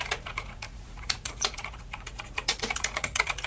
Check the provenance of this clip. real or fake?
fake